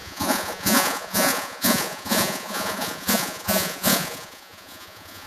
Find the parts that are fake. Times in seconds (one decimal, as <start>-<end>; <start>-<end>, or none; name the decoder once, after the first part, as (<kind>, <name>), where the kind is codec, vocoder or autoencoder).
0.0-5.3 (vocoder, Vocos)